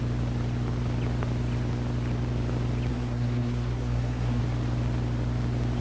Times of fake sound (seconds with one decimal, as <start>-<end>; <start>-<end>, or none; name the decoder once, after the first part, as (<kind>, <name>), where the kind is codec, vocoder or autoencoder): 2.9-4.4 (codec, SNAC)

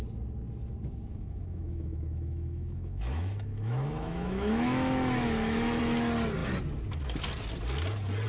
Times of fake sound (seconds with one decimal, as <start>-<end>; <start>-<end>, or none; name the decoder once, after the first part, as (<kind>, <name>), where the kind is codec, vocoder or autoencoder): 1.1-5.8 (autoencoder, DAC-VAE)